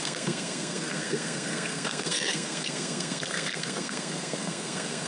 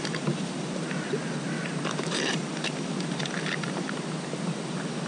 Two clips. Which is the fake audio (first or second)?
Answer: first